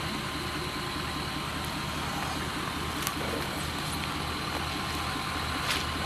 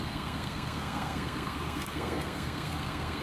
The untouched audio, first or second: first